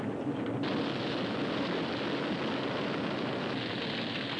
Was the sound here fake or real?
real